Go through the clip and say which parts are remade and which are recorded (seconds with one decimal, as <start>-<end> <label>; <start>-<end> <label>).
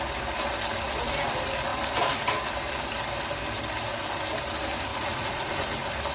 0.0-4.9 recorded; 4.9-5.5 remade; 5.5-6.1 recorded